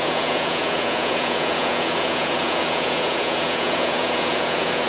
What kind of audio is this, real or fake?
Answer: fake